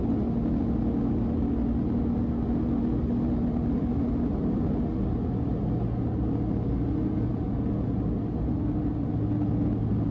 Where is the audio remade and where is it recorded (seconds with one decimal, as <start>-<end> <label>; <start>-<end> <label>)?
0.0-10.1 recorded